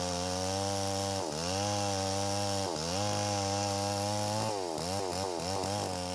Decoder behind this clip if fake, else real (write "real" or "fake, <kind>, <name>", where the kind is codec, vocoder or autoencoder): real